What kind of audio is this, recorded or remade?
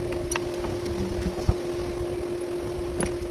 recorded